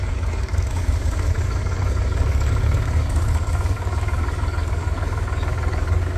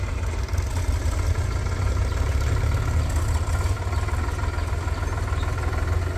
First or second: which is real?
second